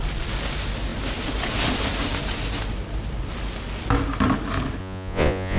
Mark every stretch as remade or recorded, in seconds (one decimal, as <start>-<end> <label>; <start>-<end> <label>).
0.0-4.8 recorded; 4.8-5.6 remade